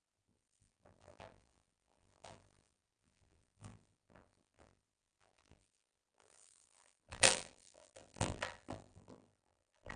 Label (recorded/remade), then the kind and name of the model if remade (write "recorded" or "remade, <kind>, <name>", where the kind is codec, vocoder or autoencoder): remade, vocoder, BigVGAN v2